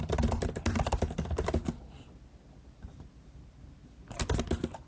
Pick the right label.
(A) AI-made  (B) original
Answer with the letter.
B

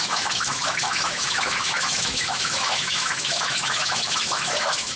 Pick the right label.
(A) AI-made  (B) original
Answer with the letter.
A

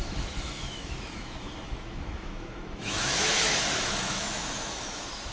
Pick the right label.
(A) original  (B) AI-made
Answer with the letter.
B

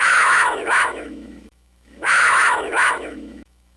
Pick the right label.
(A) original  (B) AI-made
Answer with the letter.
B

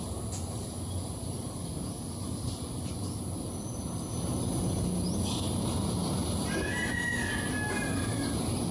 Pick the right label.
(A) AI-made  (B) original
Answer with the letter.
B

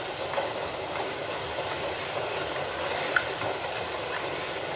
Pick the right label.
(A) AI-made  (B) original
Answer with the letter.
B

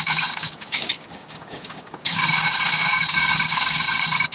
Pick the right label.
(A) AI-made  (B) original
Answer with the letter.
A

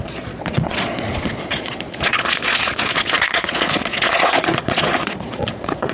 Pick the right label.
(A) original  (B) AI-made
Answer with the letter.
B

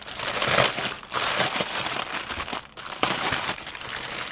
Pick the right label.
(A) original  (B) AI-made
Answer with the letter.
B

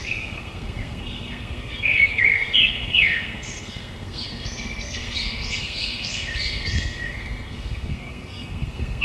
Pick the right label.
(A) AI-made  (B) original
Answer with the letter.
A